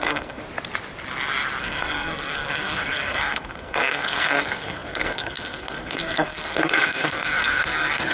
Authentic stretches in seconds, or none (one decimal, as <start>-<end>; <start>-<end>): 0.4-1.6